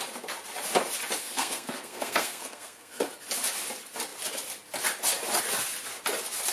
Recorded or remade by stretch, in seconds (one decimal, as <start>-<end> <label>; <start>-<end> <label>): 0.0-1.2 recorded; 1.2-3.1 remade; 3.1-6.5 recorded